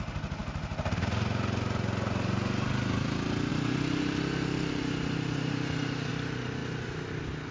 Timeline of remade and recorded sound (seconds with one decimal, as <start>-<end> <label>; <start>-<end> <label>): 0.0-3.5 recorded; 3.5-6.1 remade; 6.1-7.5 recorded